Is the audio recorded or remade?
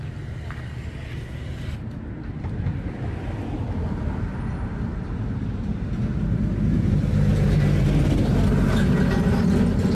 recorded